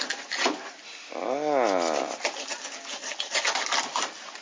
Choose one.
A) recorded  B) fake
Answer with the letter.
A